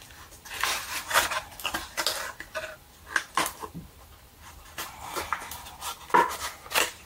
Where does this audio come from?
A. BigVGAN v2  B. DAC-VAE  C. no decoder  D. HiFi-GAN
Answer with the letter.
C